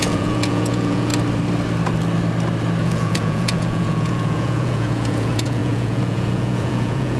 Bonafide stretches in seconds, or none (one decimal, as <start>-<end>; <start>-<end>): 1.1-2.8